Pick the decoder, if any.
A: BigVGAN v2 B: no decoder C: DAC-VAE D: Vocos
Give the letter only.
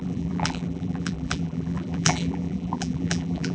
A